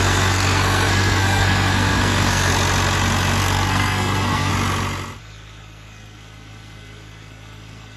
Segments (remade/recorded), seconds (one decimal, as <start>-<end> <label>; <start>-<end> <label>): 0.0-2.5 remade; 2.5-3.4 recorded; 3.4-4.5 remade; 4.5-5.2 recorded; 5.2-8.0 remade